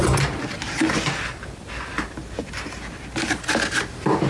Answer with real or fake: real